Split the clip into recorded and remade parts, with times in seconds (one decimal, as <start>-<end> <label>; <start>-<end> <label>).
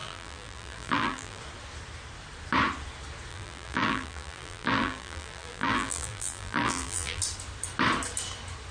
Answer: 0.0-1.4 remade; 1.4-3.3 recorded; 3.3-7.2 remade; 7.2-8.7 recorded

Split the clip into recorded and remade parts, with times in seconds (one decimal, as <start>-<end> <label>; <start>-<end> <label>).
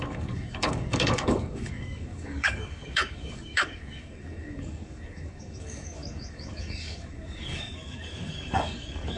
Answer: 0.0-9.2 remade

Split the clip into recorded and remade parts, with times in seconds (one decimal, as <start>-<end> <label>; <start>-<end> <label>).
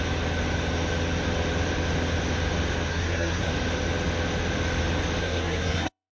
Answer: 0.0-2.9 recorded; 2.9-3.5 remade; 3.5-5.2 recorded; 5.2-6.1 remade